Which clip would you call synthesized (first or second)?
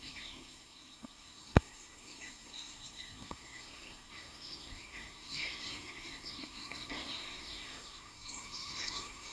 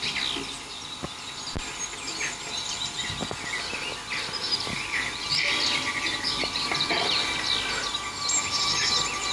first